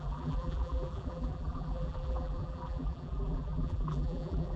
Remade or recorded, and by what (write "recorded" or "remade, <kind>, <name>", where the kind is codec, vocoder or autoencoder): remade, vocoder, BigVGAN v2